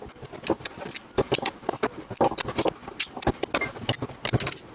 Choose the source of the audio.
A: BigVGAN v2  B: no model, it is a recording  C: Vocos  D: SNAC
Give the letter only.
B